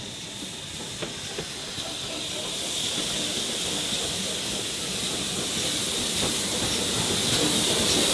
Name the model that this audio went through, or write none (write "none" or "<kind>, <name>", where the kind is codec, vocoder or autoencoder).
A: none